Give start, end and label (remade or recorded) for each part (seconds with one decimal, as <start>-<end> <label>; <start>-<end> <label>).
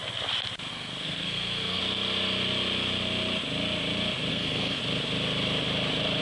0.0-0.7 recorded; 0.7-1.8 remade; 1.8-4.3 recorded; 4.3-4.8 remade; 4.8-6.2 recorded